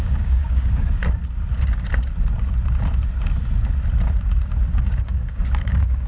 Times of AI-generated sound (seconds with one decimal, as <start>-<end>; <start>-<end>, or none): 0.0-1.0; 4.7-6.1